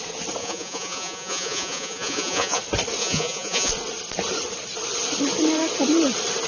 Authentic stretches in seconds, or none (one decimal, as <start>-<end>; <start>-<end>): 0.0-0.4; 2.6-3.0; 3.7-6.5